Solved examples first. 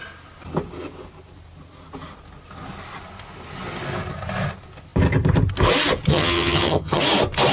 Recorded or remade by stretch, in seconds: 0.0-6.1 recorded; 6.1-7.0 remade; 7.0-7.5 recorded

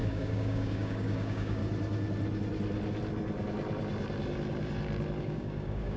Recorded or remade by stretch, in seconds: 0.0-1.6 remade; 1.6-5.2 recorded; 5.2-6.0 remade